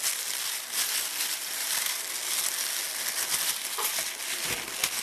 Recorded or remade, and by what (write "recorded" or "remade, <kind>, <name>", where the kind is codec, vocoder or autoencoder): recorded